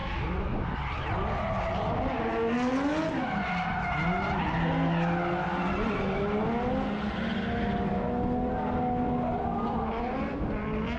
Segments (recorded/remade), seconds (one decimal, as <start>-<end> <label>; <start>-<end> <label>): 0.0-11.0 recorded